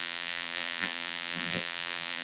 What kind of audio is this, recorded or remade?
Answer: remade